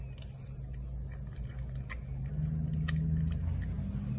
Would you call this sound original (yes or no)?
yes